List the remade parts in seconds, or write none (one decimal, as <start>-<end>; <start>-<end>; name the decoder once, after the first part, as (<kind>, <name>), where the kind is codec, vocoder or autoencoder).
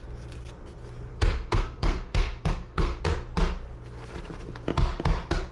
1.1-3.0 (codec, SNAC)